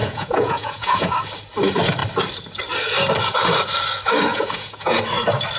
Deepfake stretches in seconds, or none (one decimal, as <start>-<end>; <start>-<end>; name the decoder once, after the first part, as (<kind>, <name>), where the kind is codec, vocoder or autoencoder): 0.0-1.1 (vocoder, Vocos); 4.3-5.0